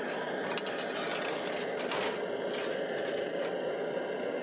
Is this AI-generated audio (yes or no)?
no